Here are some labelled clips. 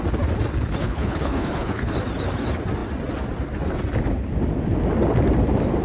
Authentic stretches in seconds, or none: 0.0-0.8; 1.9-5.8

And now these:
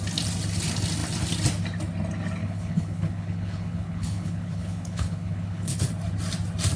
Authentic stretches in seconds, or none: 0.0-2.4; 5.9-6.8

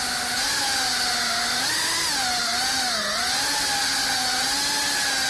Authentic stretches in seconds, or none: 0.0-5.3